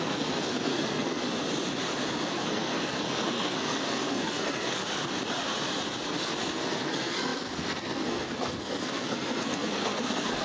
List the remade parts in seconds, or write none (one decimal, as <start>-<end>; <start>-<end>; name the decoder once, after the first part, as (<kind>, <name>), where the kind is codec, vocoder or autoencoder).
0.0-1.2 (codec, SNAC); 2.3-4.8; 6.4-10.4